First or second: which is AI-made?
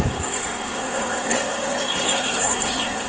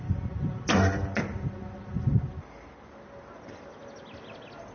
first